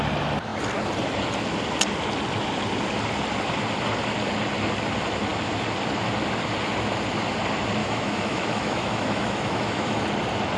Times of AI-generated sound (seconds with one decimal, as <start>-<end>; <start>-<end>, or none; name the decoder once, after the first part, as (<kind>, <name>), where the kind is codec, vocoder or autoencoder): 7.8-10.0 (autoencoder, DAC-VAE)